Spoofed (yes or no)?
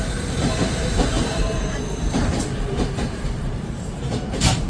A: yes